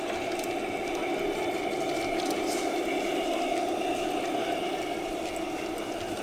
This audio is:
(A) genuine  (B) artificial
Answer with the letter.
B